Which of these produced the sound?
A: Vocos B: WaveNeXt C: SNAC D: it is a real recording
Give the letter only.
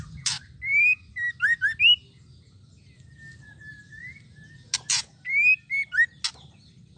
D